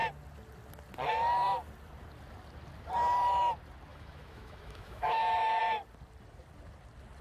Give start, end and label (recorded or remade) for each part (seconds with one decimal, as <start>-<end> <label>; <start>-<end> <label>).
0.0-3.9 recorded; 3.9-5.6 remade; 5.6-7.2 recorded

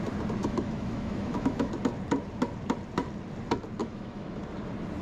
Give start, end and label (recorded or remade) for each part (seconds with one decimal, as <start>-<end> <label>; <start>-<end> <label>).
0.0-0.4 recorded; 0.4-1.7 remade; 1.7-3.8 recorded; 3.8-4.4 remade; 4.4-5.0 recorded

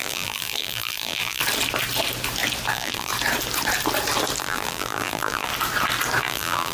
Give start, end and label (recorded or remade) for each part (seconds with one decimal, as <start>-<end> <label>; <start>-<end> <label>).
0.0-1.4 remade; 1.4-2.7 recorded; 2.7-3.1 remade; 3.1-4.4 recorded; 4.4-5.5 remade; 5.5-6.2 recorded; 6.2-6.7 remade

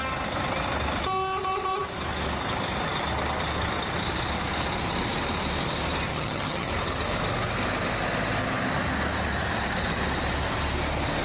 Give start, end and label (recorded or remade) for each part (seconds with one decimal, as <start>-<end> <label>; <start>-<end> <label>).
0.0-6.1 recorded; 6.1-6.7 remade; 6.7-11.2 recorded

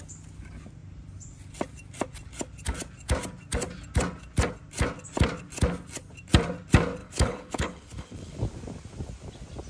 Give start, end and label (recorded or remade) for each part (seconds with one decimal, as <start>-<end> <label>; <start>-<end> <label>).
0.0-7.0 recorded; 7.0-8.4 remade; 8.4-9.7 recorded

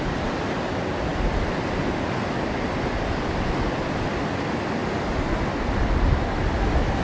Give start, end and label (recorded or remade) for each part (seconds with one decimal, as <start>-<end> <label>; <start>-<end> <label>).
0.0-7.0 recorded

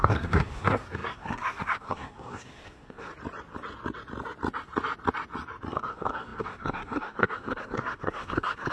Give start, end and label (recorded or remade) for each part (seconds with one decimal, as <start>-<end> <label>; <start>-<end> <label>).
0.0-3.1 remade; 3.1-5.7 recorded; 5.7-8.7 remade